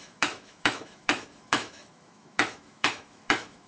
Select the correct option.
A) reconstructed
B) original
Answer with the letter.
A